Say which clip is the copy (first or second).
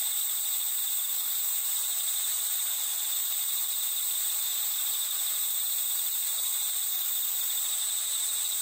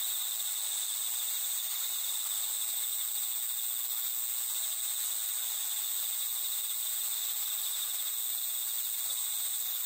first